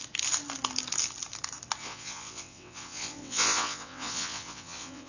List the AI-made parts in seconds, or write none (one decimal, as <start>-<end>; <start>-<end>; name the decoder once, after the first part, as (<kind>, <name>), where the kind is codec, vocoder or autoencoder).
1.8-5.1 (vocoder, WaveNeXt)